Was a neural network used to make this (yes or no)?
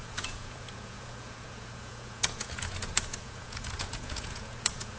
yes